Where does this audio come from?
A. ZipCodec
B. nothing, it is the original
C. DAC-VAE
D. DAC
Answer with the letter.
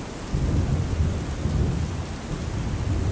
B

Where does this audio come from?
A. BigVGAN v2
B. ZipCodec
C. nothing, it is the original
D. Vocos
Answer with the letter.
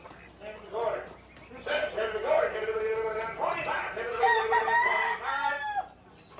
C